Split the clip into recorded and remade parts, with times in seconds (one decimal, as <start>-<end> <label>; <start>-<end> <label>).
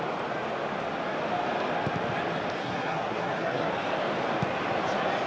0.0-2.6 recorded; 2.6-3.7 remade; 3.7-5.3 recorded